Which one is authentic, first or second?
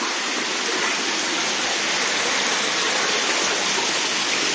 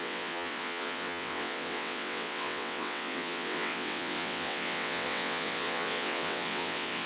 first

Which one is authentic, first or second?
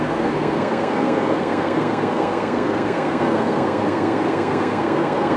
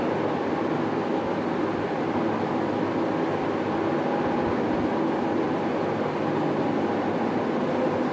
second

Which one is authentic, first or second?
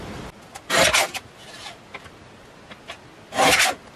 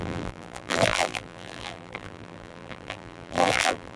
first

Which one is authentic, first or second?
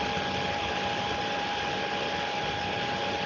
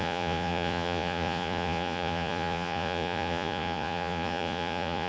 first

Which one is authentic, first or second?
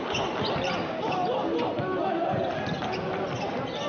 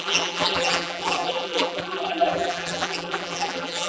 first